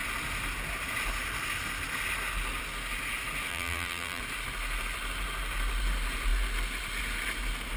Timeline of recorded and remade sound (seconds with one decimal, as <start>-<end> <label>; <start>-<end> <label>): 0.0-3.5 recorded; 3.5-4.2 remade; 4.2-7.8 recorded